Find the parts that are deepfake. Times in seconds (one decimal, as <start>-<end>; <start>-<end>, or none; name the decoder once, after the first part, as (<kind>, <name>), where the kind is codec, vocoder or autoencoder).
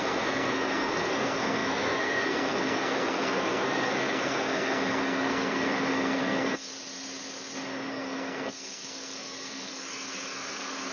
0.0-6.7 (codec, SNAC); 7.9-10.9